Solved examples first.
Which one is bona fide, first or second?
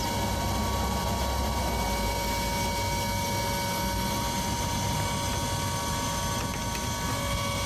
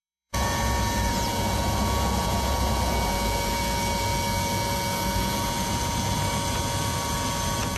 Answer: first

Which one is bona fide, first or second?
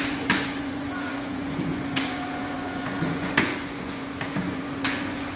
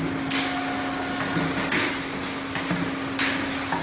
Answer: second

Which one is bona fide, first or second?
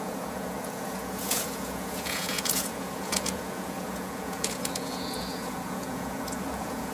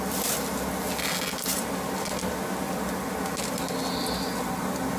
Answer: second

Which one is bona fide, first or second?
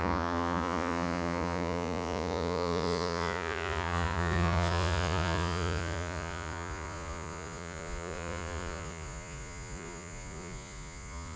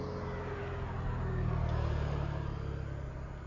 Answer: second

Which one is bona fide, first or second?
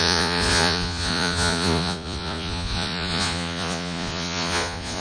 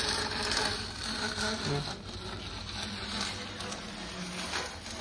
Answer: second